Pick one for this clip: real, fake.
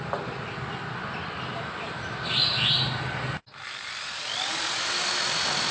real